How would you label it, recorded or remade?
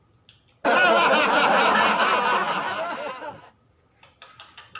recorded